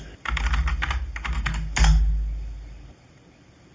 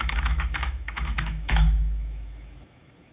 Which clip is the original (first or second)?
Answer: first